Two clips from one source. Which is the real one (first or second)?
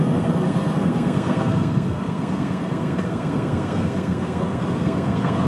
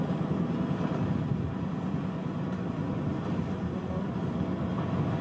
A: second